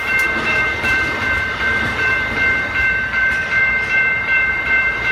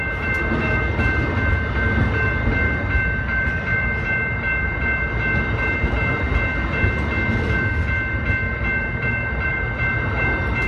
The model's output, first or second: first